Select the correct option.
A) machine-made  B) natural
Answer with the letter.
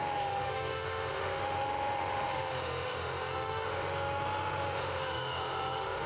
A